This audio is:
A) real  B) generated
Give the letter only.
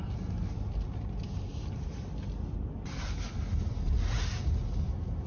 A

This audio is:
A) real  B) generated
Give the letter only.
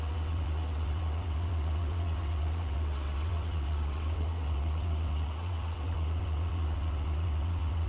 B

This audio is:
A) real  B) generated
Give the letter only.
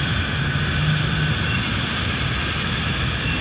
A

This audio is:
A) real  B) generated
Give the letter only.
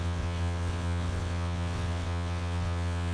B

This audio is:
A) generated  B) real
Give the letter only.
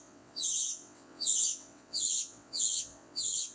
A